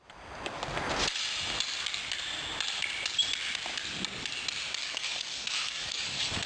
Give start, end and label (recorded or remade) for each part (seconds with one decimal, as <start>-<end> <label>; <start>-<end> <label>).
0.0-4.8 recorded; 4.8-6.5 remade